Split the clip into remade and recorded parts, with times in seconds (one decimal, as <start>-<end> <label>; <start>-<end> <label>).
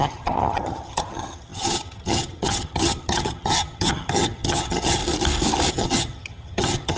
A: 0.0-5.0 remade; 5.0-5.7 recorded; 5.7-7.0 remade